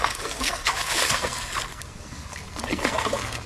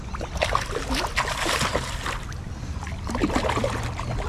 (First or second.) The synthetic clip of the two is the first